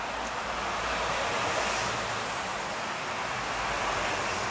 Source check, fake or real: real